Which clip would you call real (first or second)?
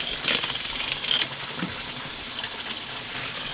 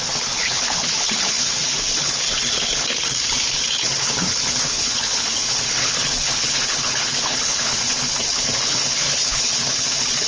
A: first